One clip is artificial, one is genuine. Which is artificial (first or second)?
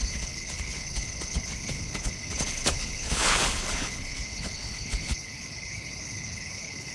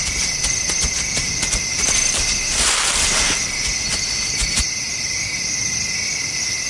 first